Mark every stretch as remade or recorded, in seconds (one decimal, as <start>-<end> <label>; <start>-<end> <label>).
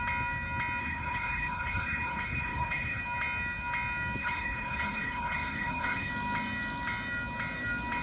0.0-0.8 recorded; 0.8-3.0 remade; 3.0-4.2 recorded; 4.2-6.1 remade; 6.1-8.0 recorded